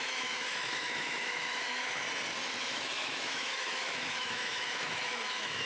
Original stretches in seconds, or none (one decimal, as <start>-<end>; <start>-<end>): 2.0-2.6